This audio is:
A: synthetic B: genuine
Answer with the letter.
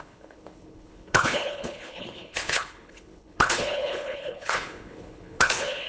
A